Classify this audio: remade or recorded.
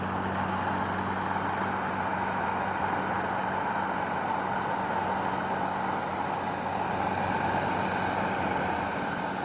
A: recorded